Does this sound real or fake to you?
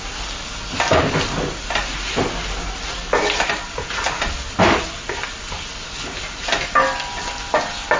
real